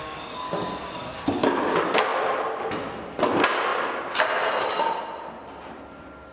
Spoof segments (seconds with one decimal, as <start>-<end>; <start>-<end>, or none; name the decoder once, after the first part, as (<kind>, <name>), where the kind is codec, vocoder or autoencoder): 0.0-1.6 (codec, DAC)